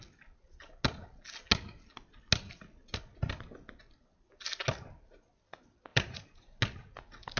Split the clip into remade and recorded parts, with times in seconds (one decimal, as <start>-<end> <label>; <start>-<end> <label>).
0.0-5.9 recorded; 5.9-6.6 remade; 6.6-7.4 recorded